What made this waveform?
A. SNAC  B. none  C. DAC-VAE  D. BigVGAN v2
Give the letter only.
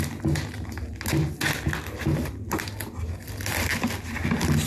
B